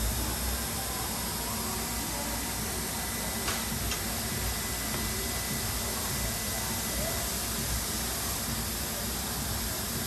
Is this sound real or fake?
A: real